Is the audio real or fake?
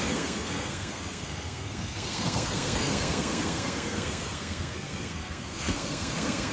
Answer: fake